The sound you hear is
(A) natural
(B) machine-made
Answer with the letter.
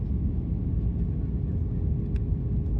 A